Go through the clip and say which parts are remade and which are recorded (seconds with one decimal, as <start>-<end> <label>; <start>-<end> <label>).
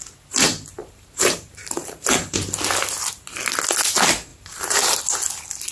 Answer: 0.0-0.8 recorded; 0.8-2.5 remade; 2.5-4.3 recorded; 4.3-5.0 remade; 5.0-5.7 recorded